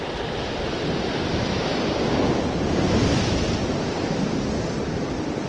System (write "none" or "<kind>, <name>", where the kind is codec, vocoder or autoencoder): none